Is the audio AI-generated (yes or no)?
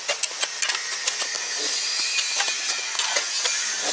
no